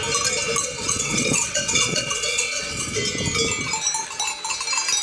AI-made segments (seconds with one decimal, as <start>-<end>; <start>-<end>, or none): 0.6-3.0